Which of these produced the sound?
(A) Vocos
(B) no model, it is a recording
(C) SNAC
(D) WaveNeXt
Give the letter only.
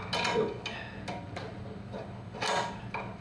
B